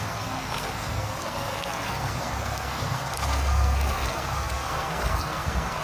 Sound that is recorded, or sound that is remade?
remade